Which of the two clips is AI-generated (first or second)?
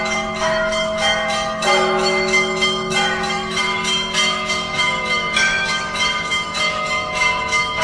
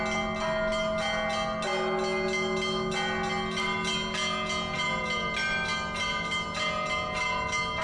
first